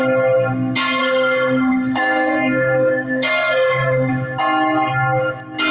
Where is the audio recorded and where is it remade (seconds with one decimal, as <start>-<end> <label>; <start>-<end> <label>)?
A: 0.0-1.0 recorded; 1.0-4.1 remade; 4.1-5.7 recorded